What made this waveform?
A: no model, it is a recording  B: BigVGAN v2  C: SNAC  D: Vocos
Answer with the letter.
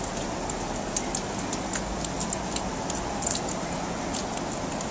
A